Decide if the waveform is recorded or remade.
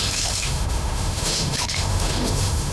remade